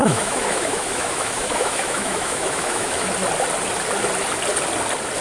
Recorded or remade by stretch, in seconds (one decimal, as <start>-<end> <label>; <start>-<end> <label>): 0.0-3.1 remade; 3.1-5.2 recorded